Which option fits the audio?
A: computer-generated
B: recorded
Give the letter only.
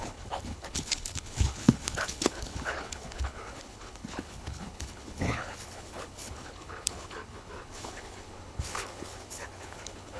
A